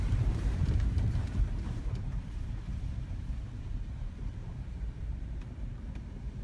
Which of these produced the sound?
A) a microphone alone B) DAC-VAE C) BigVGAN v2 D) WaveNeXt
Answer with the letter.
C